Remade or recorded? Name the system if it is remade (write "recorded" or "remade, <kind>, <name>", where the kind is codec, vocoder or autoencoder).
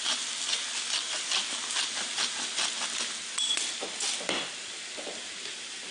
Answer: recorded